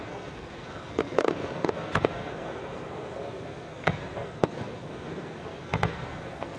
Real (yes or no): no